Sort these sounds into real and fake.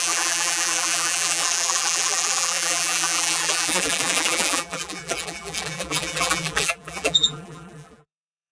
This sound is fake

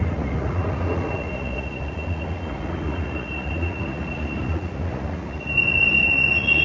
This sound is fake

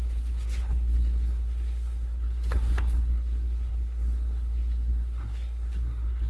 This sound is fake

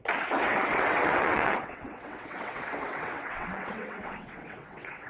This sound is fake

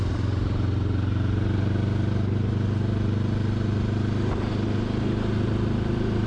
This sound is real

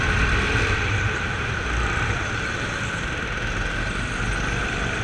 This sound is fake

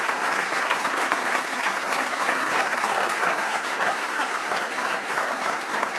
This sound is fake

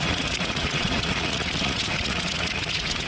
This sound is fake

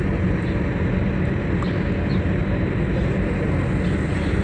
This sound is real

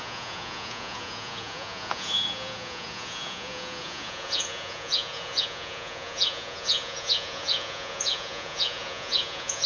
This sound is fake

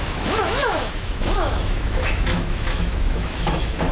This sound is fake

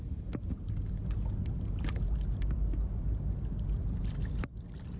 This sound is real